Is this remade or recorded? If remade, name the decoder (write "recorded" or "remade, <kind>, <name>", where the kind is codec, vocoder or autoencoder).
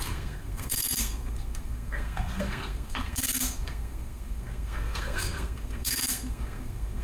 remade, codec, SNAC